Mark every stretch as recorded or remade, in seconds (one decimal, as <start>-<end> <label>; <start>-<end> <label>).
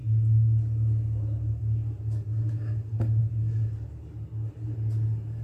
0.0-5.4 recorded